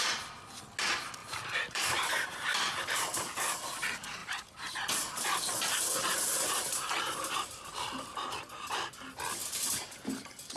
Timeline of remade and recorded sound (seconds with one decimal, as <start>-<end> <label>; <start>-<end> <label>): 0.0-1.2 recorded; 1.2-2.0 remade; 2.0-4.2 recorded; 4.2-7.0 remade; 7.0-9.4 recorded; 9.4-10.1 remade; 10.1-10.6 recorded